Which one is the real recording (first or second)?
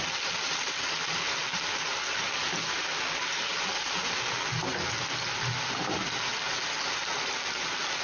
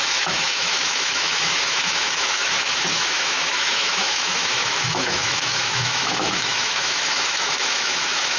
first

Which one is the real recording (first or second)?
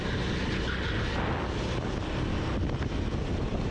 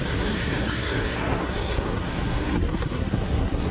first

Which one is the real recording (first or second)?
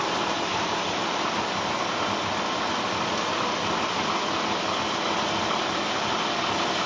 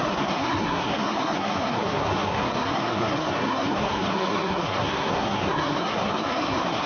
first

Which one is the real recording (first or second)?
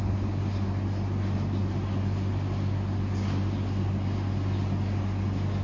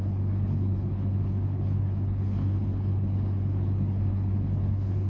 first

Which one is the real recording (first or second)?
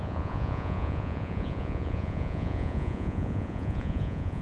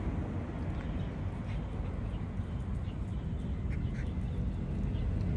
second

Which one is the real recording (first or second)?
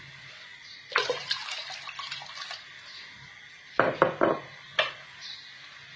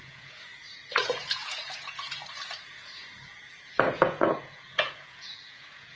first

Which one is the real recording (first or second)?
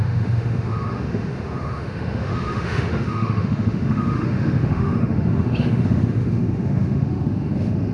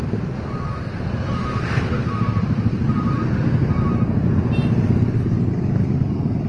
second